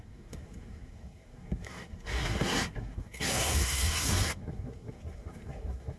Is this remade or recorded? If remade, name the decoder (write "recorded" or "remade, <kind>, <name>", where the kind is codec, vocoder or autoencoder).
remade, codec, SNAC